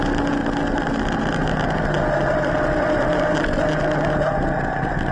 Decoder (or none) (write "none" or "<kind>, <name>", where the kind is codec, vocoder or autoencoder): none